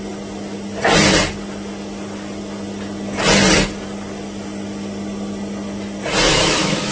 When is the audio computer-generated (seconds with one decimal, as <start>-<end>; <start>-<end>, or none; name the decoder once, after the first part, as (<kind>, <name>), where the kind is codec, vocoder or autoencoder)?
6.3-6.9 (autoencoder, DAC-VAE)